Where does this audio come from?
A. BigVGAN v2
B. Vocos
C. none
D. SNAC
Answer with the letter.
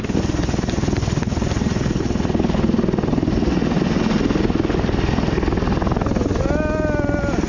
C